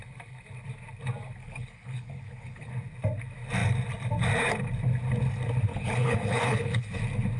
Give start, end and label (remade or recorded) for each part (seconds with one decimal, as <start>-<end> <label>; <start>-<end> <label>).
0.0-1.4 recorded; 1.4-2.7 remade; 2.7-5.7 recorded; 5.7-7.0 remade; 7.0-7.4 recorded

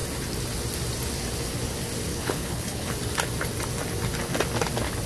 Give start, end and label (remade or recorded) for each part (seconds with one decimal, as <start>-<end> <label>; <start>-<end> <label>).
0.0-2.1 recorded; 2.1-2.9 remade; 2.9-5.1 recorded

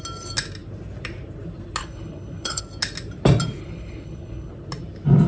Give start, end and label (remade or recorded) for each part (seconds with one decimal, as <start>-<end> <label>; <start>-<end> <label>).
0.0-1.8 recorded; 1.8-2.6 remade; 2.6-3.6 recorded; 3.6-4.5 remade; 4.5-5.3 recorded

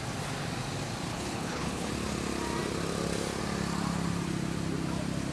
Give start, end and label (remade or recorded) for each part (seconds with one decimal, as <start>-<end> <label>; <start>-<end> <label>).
0.0-1.1 recorded; 1.1-1.9 remade; 1.9-5.3 recorded

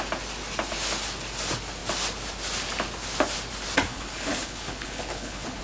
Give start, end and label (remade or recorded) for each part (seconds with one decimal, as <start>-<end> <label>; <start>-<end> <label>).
0.0-3.9 recorded; 3.9-5.6 remade